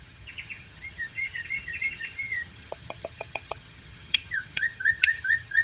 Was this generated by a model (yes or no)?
yes